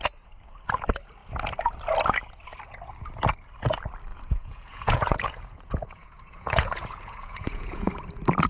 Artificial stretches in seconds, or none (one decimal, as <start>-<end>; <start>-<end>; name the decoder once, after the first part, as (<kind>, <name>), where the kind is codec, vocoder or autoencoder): 4.1-7.9 (vocoder, Vocos)